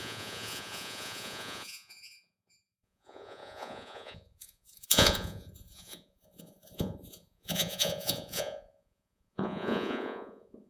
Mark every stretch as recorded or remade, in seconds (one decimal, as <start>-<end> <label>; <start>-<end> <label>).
0.0-10.7 remade